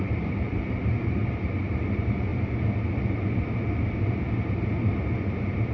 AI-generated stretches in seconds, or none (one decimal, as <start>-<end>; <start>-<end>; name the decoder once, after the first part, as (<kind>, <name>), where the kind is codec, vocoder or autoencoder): 0.0-1.2 (vocoder, BigVGAN v2); 1.8-2.3